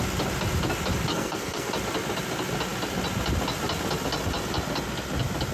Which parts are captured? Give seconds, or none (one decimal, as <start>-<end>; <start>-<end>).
0.0-1.1; 1.7-5.5